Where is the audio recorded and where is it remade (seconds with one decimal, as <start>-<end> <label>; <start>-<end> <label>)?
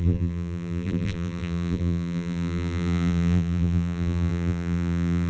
0.0-5.3 remade